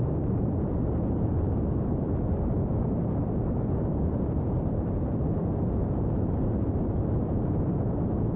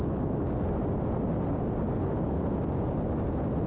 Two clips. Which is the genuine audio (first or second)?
second